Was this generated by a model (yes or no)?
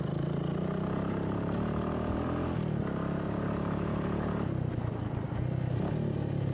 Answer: no